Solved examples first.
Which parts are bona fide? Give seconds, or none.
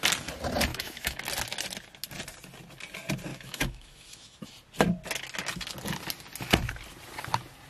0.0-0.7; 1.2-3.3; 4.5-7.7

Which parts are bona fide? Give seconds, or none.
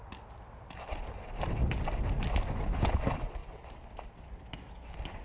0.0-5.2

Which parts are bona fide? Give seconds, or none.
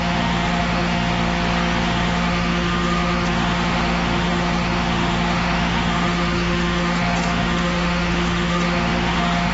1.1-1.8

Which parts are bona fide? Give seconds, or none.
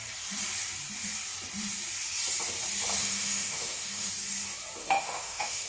0.0-3.0; 4.1-4.8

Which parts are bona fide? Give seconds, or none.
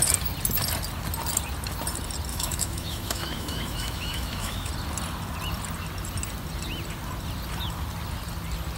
0.0-2.3; 4.7-8.8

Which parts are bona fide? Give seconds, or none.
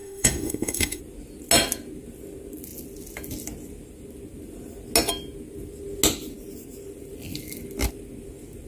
1.0-8.7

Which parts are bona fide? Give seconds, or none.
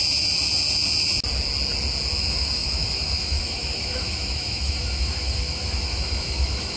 0.0-2.2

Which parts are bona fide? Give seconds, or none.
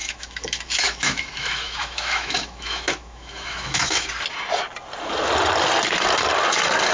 4.1-6.9